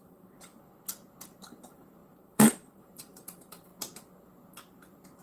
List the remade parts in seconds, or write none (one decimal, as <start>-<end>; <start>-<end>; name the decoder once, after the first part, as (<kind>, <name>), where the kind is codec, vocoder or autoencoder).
0.0-0.5 (vocoder, BigVGAN v2); 1.4-3.7